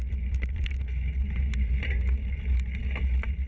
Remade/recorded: recorded